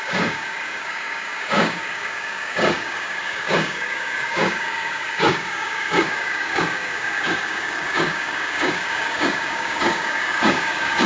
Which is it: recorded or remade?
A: remade